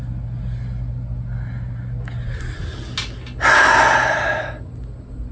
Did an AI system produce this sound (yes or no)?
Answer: no